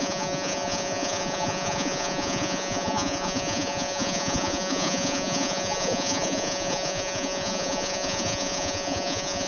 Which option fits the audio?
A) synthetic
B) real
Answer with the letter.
A